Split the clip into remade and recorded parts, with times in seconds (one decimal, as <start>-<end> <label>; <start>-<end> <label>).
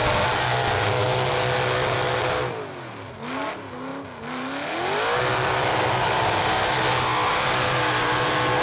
0.0-8.6 recorded